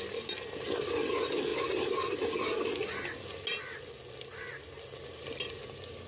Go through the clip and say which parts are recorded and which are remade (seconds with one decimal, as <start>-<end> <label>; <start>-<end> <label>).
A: 0.0-6.1 recorded